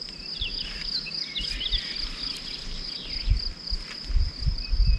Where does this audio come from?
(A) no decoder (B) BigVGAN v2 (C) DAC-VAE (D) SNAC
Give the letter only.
A